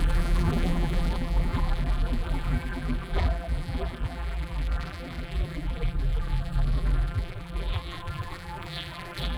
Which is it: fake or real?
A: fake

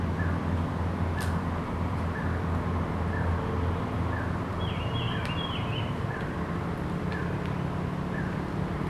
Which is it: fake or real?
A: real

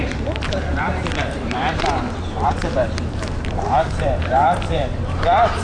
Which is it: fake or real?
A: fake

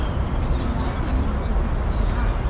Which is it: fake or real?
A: real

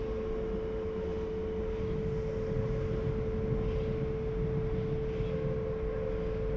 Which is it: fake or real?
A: real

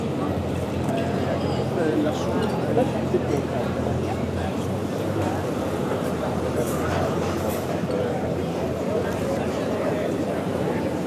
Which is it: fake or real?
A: fake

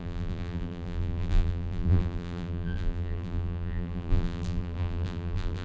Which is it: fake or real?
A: fake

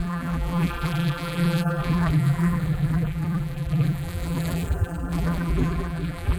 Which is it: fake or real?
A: fake